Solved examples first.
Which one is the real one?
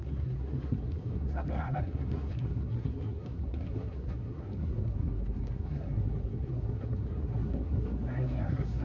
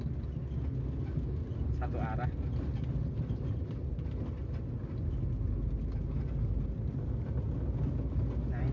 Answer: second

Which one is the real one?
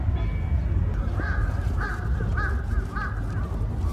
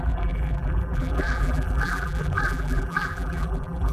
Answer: first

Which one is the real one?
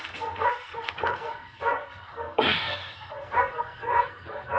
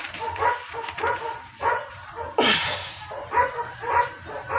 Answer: second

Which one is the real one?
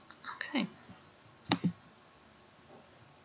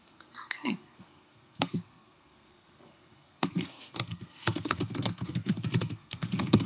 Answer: first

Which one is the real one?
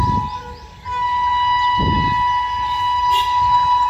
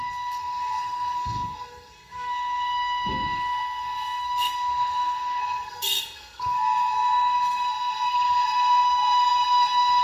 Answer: first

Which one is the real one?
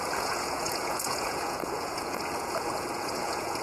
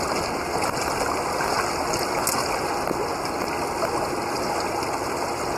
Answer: second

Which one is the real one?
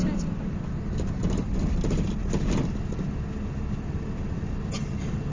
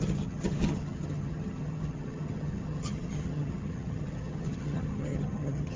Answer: first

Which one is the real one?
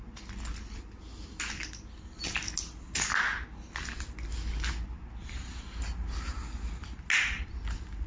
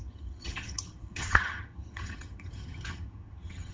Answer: first